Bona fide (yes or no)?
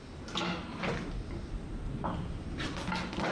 yes